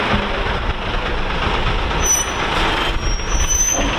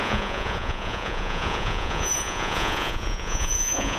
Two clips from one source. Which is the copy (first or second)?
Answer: second